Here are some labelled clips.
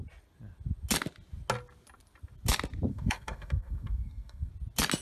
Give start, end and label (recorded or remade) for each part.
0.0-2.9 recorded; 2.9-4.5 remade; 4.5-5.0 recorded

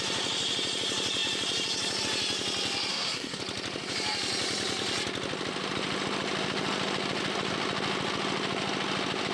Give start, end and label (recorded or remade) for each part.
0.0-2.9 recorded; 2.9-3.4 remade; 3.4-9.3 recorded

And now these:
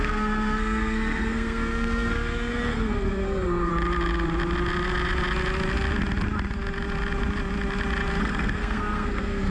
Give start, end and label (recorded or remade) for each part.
0.0-3.7 remade; 3.7-8.2 recorded; 8.2-9.5 remade

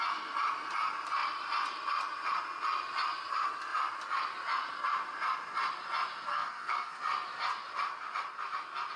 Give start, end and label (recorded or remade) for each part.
0.0-6.3 recorded; 6.3-7.0 remade; 7.0-9.0 recorded

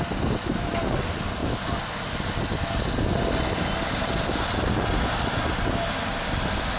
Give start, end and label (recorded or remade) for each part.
0.0-6.8 recorded

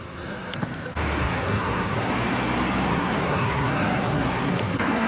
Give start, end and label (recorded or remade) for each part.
0.0-0.6 remade; 0.6-1.2 recorded; 1.2-2.1 remade; 2.1-2.9 recorded; 2.9-5.1 remade

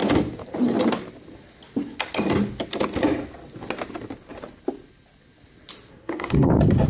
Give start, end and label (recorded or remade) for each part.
0.0-5.9 recorded; 5.9-6.5 remade; 6.5-6.9 recorded

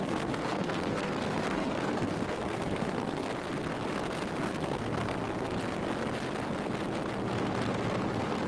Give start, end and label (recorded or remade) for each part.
0.0-3.3 remade; 3.3-4.4 recorded; 4.4-5.2 remade; 5.2-8.1 recorded; 8.1-8.5 remade